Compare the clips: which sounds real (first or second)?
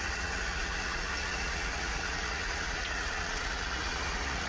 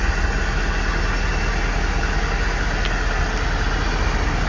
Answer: second